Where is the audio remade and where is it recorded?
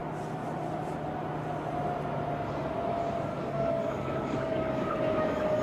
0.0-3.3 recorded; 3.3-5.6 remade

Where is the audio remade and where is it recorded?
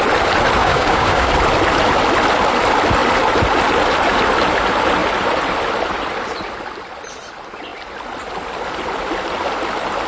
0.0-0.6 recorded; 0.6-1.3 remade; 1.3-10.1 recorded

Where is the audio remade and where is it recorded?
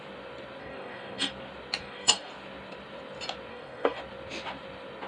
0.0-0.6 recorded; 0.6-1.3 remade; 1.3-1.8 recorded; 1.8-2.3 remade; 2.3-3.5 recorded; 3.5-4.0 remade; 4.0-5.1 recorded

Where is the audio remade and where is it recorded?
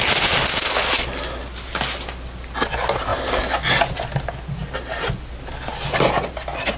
0.0-6.8 recorded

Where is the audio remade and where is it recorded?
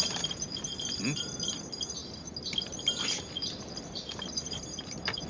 0.0-5.3 recorded